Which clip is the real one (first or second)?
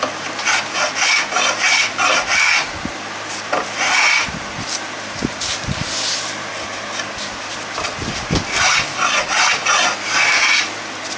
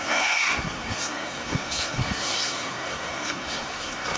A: first